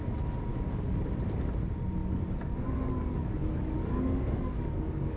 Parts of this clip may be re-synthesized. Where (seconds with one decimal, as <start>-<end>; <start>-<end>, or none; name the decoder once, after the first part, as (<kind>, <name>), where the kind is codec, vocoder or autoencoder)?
0.5-1.0 (codec, DAC); 2.0-5.2